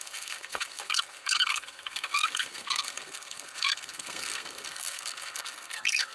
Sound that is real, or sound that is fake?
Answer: fake